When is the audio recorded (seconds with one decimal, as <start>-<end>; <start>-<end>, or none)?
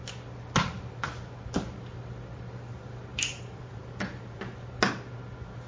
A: 0.0-3.1; 4.4-5.7